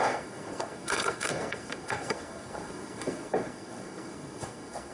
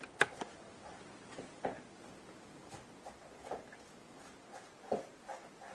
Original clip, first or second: second